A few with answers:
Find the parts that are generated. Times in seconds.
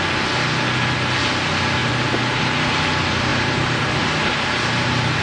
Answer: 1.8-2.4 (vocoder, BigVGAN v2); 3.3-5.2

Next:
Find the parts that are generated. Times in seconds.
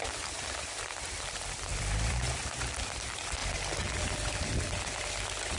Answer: 1.7-2.3 (vocoder, BigVGAN v2)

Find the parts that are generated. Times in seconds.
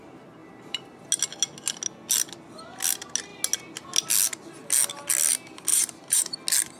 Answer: 0.4-1.0 (vocoder, BigVGAN v2); 5.7-6.3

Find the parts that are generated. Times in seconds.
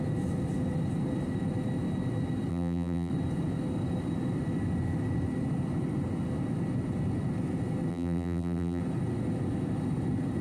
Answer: 2.5-3.1 (vocoder, BigVGAN v2); 7.9-8.8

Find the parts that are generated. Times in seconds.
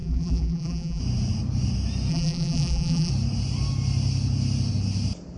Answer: 0.0-1.0 (vocoder, BigVGAN v2); 2.1-3.1